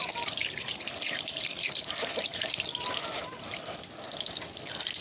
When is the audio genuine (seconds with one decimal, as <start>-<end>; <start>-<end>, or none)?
0.0-0.4; 2.5-5.0

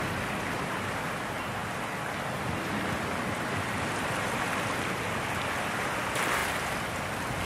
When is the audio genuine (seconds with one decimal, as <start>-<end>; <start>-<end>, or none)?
0.0-7.4

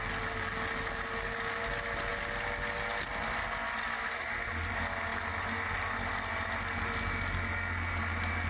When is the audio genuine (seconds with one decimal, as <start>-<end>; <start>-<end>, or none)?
0.0-8.5

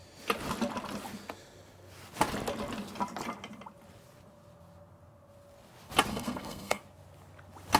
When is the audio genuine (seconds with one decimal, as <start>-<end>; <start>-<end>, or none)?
0.0-6.1; 6.8-7.8

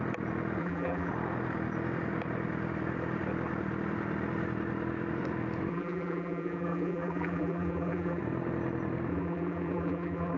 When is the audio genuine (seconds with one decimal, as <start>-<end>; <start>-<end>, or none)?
0.0-0.6; 1.1-5.7; 8.2-9.1

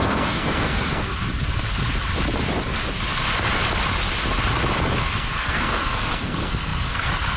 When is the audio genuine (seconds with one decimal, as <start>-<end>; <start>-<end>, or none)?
1.1-5.0